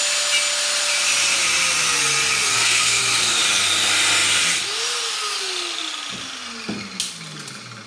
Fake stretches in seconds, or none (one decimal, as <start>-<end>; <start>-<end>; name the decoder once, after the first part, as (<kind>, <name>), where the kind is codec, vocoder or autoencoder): 2.5-3.0 (codec, SNAC)